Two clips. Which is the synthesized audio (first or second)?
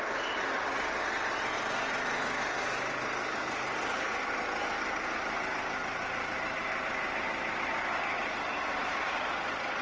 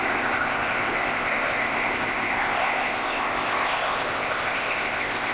second